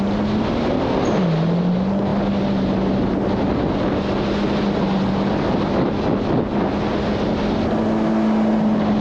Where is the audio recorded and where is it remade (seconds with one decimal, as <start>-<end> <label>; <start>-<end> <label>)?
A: 0.0-9.0 recorded